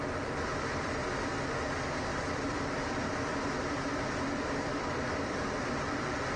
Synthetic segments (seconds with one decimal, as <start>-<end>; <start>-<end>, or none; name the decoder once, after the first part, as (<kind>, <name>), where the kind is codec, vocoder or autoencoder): 0.0-1.0 (vocoder, BigVGAN v2); 2.1-5.9

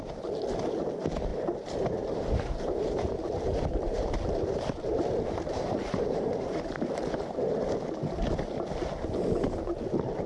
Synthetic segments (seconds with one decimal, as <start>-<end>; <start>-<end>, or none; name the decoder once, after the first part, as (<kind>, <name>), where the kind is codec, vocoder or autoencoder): 1.3-4.1 (vocoder, BigVGAN v2); 4.9-7.0

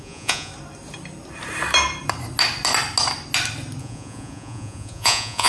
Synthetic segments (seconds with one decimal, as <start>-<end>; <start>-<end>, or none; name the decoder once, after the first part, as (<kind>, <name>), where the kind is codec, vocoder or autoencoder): 0.0-0.5 (vocoder, Vocos); 3.8-5.5

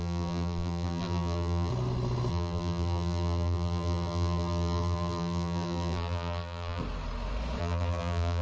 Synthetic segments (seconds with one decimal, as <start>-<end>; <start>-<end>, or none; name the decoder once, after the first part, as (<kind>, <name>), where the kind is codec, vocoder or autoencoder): 0.0-1.7 (vocoder, BigVGAN v2); 2.3-6.8; 7.6-8.4

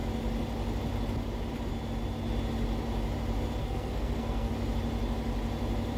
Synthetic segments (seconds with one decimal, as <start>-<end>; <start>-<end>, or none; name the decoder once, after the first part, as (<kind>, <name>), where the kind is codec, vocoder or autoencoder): 3.6-4.5 (codec, SNAC)

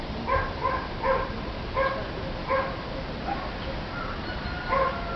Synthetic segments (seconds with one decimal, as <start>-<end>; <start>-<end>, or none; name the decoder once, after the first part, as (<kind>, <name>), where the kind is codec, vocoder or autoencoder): none